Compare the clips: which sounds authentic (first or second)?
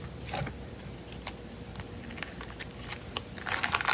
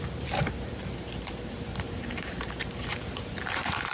first